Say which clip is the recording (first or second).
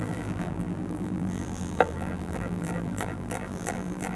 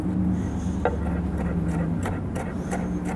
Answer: second